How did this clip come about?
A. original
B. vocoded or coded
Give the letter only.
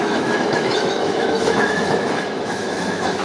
B